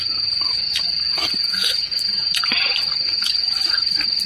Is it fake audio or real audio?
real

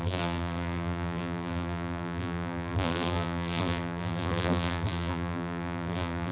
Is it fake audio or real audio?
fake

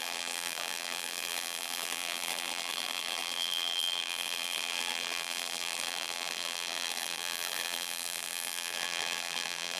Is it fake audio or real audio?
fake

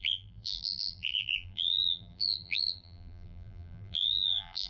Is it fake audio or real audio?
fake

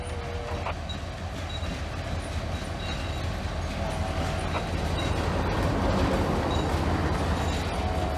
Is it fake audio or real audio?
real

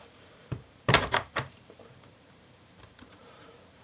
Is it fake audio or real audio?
fake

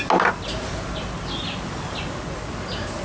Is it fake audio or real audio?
real